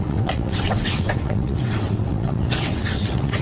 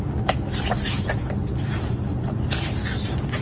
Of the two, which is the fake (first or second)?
first